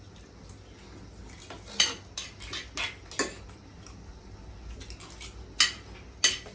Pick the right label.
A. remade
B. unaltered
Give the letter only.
B